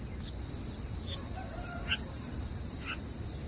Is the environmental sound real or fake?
real